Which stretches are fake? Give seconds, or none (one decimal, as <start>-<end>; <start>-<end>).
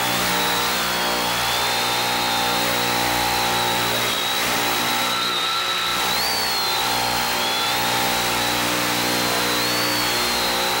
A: none